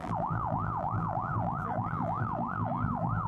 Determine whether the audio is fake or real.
fake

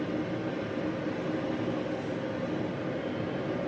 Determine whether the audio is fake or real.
real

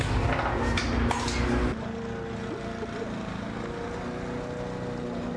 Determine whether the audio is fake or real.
real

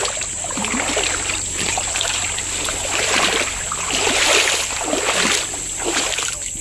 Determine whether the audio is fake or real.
fake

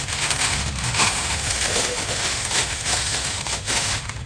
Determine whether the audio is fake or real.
fake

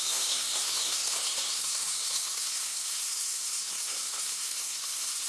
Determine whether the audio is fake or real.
fake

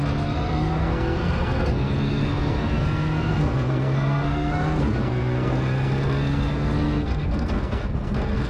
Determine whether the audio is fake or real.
fake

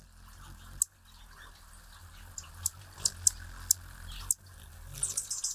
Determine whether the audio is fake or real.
real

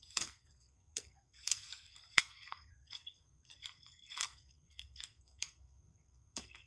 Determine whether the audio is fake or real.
fake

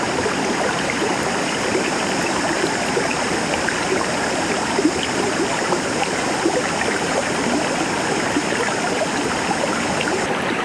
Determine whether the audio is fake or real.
real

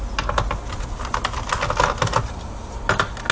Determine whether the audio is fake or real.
real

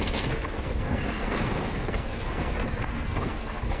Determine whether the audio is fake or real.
fake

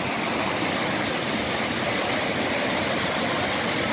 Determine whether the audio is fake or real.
real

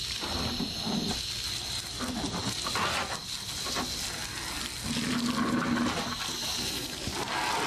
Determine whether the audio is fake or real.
real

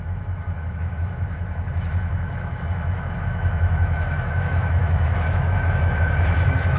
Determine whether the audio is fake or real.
fake